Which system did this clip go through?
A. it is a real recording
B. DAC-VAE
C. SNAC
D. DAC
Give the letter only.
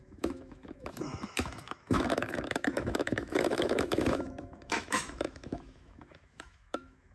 B